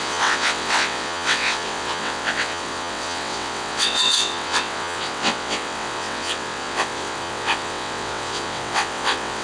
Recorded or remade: remade